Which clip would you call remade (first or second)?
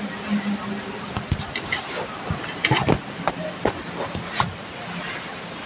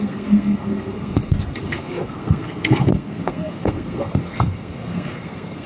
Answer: second